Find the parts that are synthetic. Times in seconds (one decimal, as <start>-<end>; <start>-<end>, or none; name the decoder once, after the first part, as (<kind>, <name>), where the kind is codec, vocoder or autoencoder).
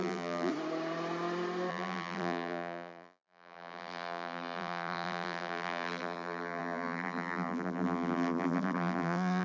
0.0-0.5 (vocoder, BigVGAN v2); 1.7-9.4